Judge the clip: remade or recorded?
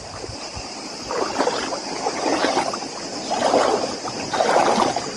recorded